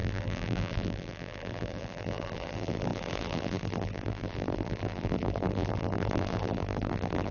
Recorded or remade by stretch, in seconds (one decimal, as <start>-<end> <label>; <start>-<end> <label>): 0.0-7.3 remade